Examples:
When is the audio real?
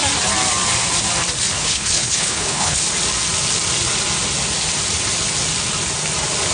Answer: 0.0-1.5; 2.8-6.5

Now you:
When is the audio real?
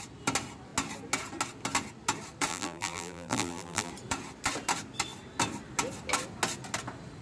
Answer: 0.0-2.5; 3.9-7.2